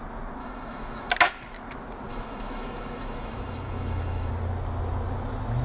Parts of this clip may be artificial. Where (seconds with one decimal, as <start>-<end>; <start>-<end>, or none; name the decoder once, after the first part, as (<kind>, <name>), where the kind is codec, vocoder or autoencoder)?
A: 0.4-1.1 (autoencoder, DAC-VAE); 2.1-4.3